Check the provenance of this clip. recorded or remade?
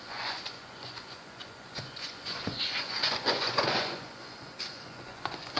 remade